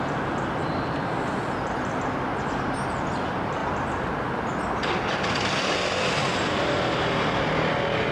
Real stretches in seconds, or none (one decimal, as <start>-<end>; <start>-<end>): 0.0-8.1